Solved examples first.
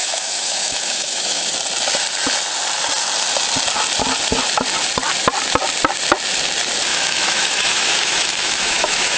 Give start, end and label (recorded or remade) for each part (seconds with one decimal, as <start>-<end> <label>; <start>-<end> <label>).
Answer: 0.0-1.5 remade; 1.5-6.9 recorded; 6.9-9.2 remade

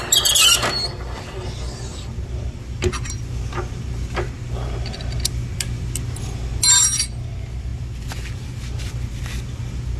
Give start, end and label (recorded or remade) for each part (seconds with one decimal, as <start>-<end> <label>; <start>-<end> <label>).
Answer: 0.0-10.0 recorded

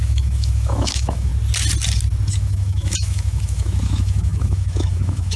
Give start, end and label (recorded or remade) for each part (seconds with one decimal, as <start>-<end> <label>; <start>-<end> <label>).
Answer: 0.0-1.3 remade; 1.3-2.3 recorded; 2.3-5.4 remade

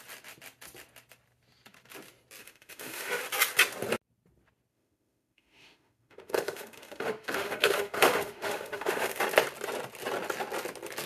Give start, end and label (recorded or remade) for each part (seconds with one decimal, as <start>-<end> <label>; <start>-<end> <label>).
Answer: 0.0-2.4 recorded; 2.4-3.2 remade; 3.2-4.7 recorded; 4.7-9.2 remade; 9.2-11.1 recorded

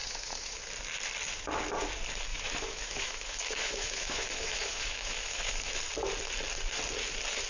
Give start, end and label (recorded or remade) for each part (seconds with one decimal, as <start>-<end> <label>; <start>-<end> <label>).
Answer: 0.0-0.6 remade; 0.6-2.3 recorded; 2.3-5.8 remade; 5.8-7.5 recorded